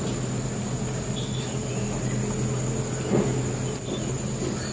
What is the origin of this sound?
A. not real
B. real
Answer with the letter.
B